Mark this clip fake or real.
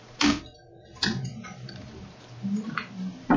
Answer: real